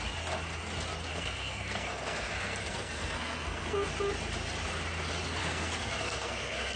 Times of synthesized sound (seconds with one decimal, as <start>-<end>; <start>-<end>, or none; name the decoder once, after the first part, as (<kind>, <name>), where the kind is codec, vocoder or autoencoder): 1.1-3.9 (codec, SNAC); 5.4-6.8